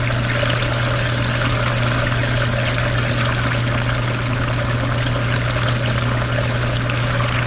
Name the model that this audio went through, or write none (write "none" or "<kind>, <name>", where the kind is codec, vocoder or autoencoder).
none